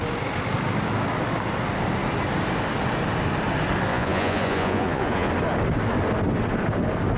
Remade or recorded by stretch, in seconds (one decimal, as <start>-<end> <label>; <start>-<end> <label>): 0.0-3.9 recorded; 3.9-5.3 remade; 5.3-7.2 recorded

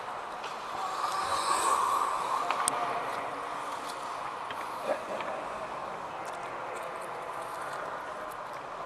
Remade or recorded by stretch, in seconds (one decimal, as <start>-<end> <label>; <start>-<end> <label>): 0.0-1.3 recorded; 1.3-1.8 remade; 1.8-3.1 recorded; 3.1-3.7 remade; 3.7-4.2 recorded; 4.2-5.6 remade; 5.6-8.9 recorded

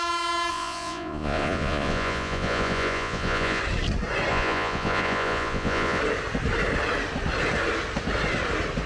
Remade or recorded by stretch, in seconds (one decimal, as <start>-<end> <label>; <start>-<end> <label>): 0.0-0.5 recorded; 0.5-3.6 remade; 3.6-4.3 recorded; 4.3-6.0 remade; 6.0-8.9 recorded

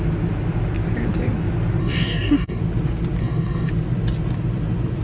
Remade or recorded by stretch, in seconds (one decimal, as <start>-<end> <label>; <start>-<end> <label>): 0.0-1.8 recorded; 1.8-2.6 remade; 2.6-3.2 recorded; 3.2-3.7 remade; 3.7-5.0 recorded

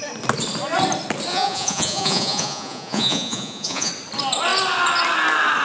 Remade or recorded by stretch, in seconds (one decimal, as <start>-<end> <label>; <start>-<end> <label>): 0.0-1.3 recorded; 1.3-3.9 remade; 3.9-5.6 recorded